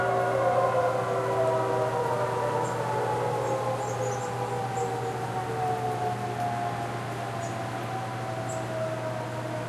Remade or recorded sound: recorded